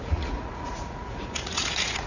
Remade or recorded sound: remade